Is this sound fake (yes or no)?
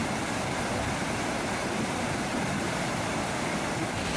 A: no